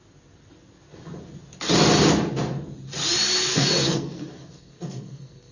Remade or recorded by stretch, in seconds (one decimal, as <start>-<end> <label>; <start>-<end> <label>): 0.0-3.5 recorded; 3.5-5.5 remade